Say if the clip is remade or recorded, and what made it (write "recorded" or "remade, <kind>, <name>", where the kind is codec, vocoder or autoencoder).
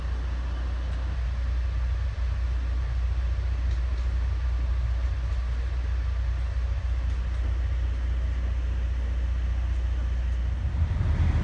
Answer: recorded